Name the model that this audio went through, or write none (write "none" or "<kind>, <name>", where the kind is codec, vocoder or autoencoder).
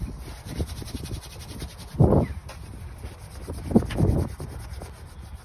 none